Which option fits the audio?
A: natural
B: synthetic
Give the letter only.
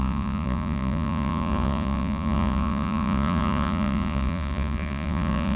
B